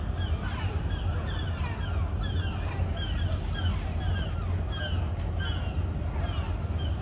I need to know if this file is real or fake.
real